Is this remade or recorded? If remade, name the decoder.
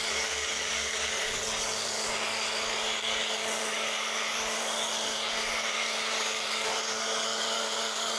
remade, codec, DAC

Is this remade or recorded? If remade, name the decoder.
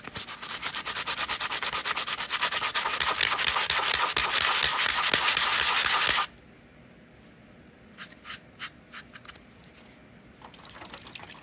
recorded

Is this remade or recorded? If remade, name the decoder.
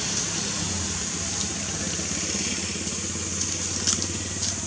recorded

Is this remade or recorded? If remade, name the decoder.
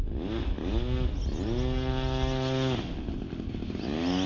recorded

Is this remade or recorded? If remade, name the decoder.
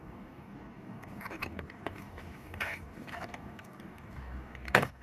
remade, codec, DAC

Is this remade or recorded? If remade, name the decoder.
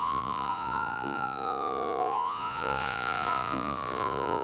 remade, vocoder, Vocos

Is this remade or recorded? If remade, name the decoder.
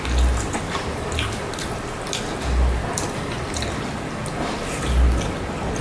recorded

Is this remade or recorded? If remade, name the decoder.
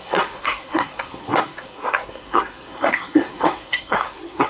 remade, codec, SNAC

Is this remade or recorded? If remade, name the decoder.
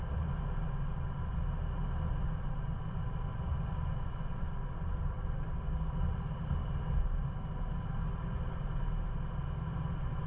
recorded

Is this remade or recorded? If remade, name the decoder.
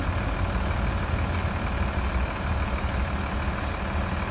recorded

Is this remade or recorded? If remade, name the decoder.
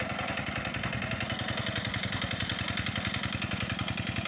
recorded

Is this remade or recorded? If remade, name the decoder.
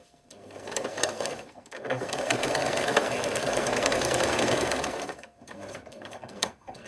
remade, codec, SNAC